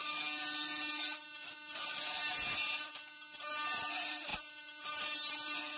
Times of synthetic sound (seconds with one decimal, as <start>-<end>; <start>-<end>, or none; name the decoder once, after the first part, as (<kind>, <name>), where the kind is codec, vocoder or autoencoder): 3.5-4.3 (vocoder, BigVGAN v2); 5.0-5.8